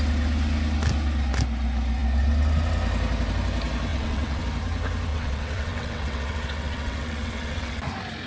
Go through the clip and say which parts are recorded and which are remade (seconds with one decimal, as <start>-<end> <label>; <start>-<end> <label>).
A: 0.0-3.9 recorded; 3.9-4.4 remade; 4.4-5.1 recorded; 5.1-7.8 remade; 7.8-8.3 recorded